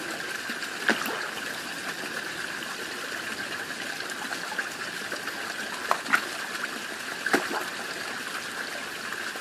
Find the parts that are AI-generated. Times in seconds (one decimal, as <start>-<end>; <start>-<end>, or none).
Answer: none